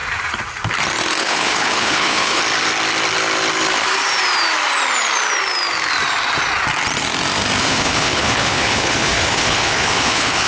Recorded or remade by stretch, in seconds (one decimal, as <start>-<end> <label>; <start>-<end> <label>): 0.0-1.2 recorded; 1.2-2.4 remade; 2.4-7.6 recorded; 7.6-10.5 remade